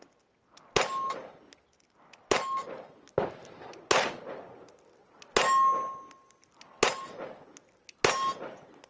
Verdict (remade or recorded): recorded